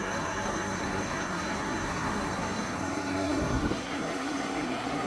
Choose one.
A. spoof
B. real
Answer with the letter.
A